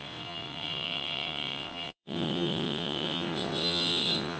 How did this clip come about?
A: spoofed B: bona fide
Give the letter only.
A